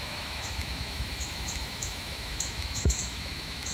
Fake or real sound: fake